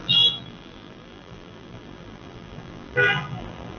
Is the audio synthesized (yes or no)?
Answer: yes